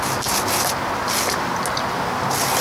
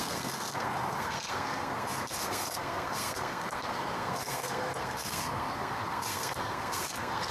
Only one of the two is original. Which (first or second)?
first